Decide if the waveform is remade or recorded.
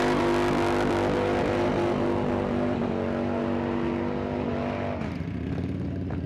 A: recorded